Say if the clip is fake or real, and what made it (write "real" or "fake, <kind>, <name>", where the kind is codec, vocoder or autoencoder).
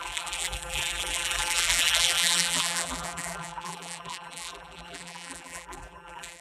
fake, vocoder, BigVGAN v2